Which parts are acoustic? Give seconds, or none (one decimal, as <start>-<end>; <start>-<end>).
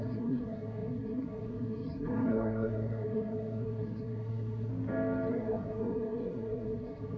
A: 4.7-5.3